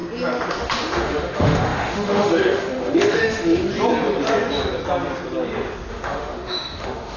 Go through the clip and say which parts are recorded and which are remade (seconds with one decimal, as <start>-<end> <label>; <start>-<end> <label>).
0.0-0.5 recorded; 0.5-3.7 remade; 3.7-5.9 recorded; 5.9-7.2 remade

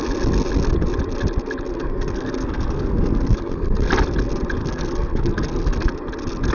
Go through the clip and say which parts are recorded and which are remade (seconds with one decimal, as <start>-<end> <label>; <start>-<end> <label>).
0.0-1.7 recorded; 1.7-3.9 remade; 3.9-4.6 recorded; 4.6-5.9 remade; 5.9-6.5 recorded

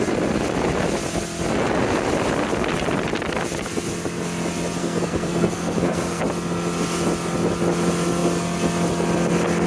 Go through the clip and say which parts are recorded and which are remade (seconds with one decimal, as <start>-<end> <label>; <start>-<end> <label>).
0.0-4.8 recorded; 4.8-6.2 remade; 6.2-9.7 recorded

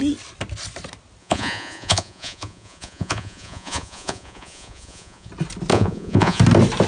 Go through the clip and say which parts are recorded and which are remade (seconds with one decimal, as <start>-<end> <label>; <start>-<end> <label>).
0.0-1.2 recorded; 1.2-5.3 remade; 5.3-5.7 recorded; 5.7-6.4 remade; 6.4-6.9 recorded

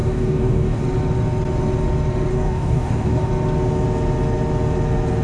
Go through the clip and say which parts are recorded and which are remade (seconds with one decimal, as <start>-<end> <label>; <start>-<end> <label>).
0.0-0.8 remade; 0.8-2.3 recorded; 2.3-3.3 remade; 3.3-5.2 recorded

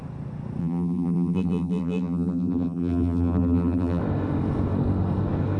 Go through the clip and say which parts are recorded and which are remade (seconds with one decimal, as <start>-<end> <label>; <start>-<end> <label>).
0.0-0.6 recorded; 0.6-4.0 remade; 4.0-5.6 recorded

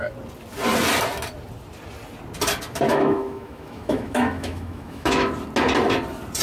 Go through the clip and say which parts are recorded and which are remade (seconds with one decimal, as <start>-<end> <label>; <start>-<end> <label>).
0.0-2.9 recorded; 2.9-5.3 remade; 5.3-6.4 recorded